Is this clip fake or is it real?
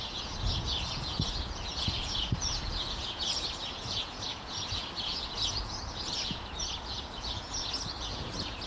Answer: fake